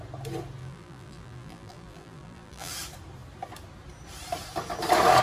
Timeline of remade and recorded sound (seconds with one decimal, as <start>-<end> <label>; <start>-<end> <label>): 0.0-0.6 recorded; 0.6-2.7 remade; 2.7-5.2 recorded